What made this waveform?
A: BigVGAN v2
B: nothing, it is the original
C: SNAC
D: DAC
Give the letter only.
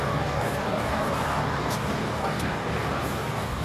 D